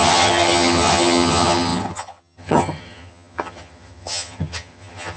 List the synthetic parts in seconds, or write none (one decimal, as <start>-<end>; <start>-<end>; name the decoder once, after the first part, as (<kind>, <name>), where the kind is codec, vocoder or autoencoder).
0.0-5.2 (vocoder, HiFi-GAN)